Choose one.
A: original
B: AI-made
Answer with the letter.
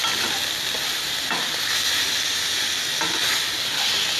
A